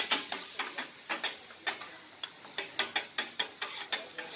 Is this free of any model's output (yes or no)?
yes